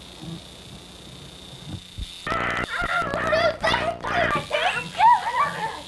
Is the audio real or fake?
real